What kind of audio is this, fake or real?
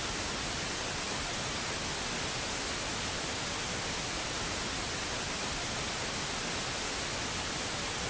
real